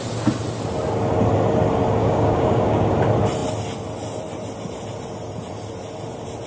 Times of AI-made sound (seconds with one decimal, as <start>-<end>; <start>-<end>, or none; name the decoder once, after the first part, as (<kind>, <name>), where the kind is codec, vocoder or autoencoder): 2.0-2.9 (codec, DAC)